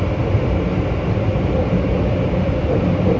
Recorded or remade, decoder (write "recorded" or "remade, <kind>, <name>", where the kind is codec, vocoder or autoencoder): recorded